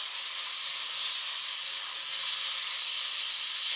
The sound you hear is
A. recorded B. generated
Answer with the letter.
A